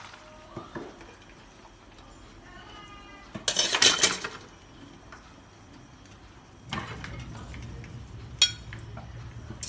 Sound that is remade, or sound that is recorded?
recorded